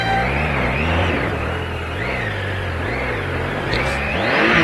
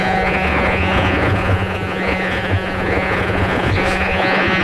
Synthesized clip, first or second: second